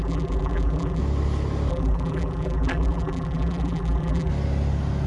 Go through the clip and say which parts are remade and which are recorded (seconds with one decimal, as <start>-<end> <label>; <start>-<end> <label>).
0.0-1.0 remade; 1.0-1.7 recorded; 1.7-4.3 remade; 4.3-5.1 recorded